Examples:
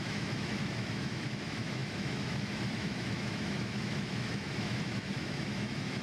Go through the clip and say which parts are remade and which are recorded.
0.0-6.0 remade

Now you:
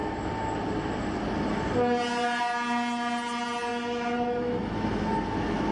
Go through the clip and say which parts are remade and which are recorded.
0.0-3.7 recorded; 3.7-5.7 remade

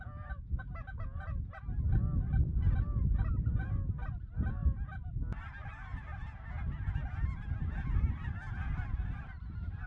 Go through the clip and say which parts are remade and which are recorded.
0.0-9.9 recorded

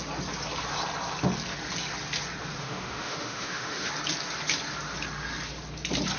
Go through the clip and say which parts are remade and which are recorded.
0.0-2.6 recorded; 2.6-3.9 remade; 3.9-6.2 recorded

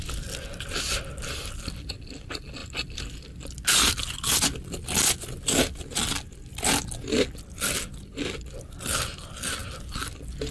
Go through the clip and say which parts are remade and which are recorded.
0.0-10.5 recorded

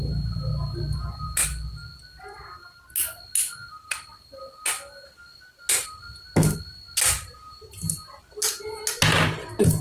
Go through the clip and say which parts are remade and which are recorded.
0.0-9.8 recorded

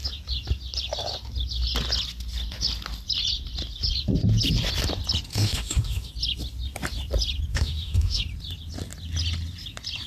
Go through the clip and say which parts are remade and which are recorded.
0.0-5.3 recorded; 5.3-6.1 remade; 6.1-7.5 recorded; 7.5-8.2 remade; 8.2-10.1 recorded

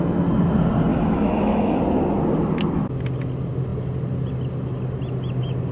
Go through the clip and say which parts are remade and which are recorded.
0.0-0.9 recorded; 0.9-1.8 remade; 1.8-5.7 recorded